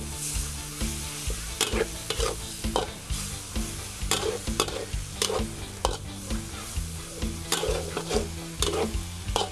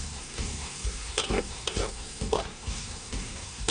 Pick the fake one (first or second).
second